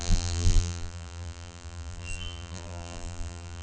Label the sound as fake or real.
fake